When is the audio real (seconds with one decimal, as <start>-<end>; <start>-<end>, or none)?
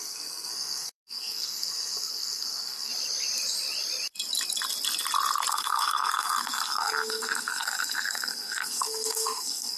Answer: 2.9-5.5